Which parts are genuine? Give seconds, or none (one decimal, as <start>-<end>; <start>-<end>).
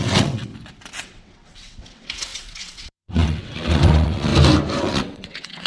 0.5-1.0; 4.3-4.8